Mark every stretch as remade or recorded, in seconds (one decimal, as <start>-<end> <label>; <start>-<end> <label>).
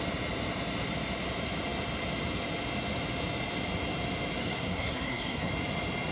0.0-4.4 recorded; 4.4-5.5 remade; 5.5-6.1 recorded